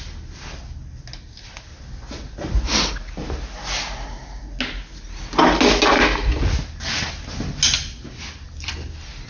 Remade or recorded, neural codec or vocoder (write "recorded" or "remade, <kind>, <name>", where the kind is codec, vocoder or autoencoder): recorded